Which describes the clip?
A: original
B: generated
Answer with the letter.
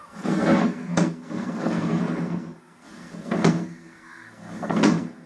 B